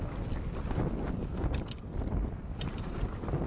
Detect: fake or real real